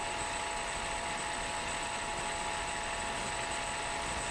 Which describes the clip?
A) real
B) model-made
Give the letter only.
A